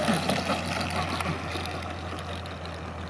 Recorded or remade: recorded